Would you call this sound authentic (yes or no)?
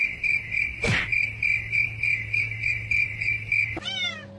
yes